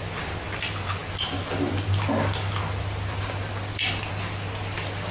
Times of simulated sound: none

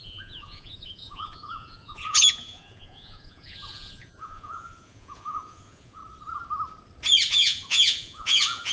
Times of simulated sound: 0.0-6.0 (vocoder, Vocos); 7.3-8.7

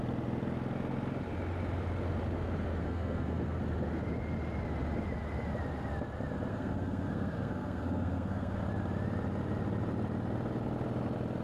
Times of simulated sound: 2.8-3.6 (codec, SNAC); 6.5-8.6

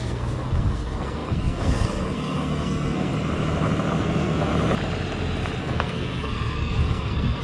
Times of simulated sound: 0.0-3.1 (codec, SNAC); 4.0-4.5; 5.6-7.4

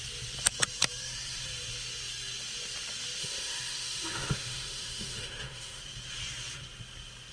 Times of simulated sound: 3.2-5.8 (autoencoder, DAC-VAE)

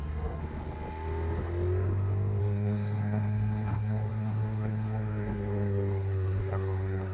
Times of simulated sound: 0.0-0.4 (codec, SNAC); 2.4-7.1

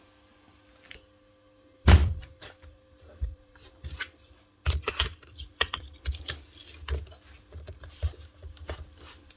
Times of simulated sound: 2.0-6.0 (vocoder, BigVGAN v2)

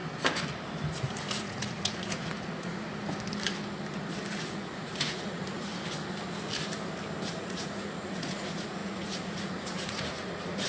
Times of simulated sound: 1.4-2.9 (vocoder, Vocos); 4.4-5.7; 7.4-10.7